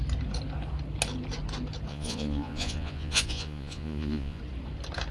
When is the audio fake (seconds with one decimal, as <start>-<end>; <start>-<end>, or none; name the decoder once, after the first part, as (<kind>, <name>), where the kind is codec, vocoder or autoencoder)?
1.9-4.4 (vocoder, Vocos)